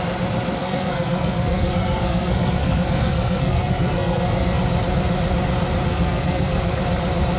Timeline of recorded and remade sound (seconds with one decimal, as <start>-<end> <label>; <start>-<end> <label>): 0.0-0.6 recorded; 0.6-4.6 remade; 4.6-5.9 recorded; 5.9-6.8 remade; 6.8-7.4 recorded